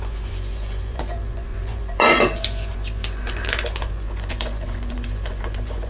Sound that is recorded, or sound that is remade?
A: remade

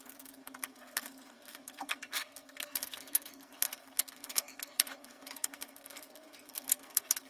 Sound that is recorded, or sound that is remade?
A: remade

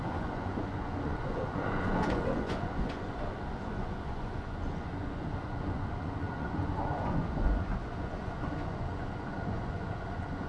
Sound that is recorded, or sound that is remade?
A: remade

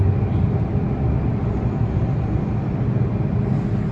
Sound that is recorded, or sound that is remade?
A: recorded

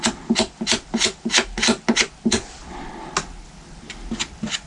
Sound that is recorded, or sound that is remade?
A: recorded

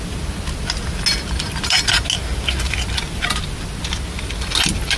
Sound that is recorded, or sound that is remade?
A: recorded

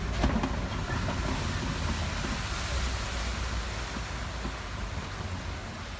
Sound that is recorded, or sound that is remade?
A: recorded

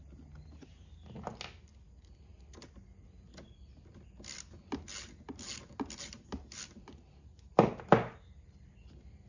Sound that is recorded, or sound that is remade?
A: recorded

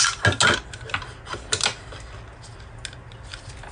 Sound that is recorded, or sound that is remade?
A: recorded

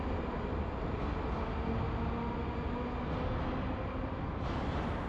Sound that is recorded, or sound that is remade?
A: recorded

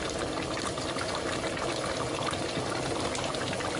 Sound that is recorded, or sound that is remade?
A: recorded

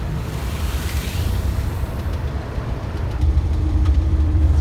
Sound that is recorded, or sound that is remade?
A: remade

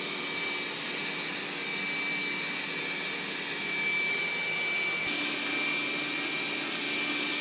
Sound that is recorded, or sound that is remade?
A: recorded